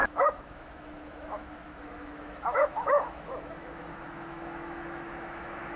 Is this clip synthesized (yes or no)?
yes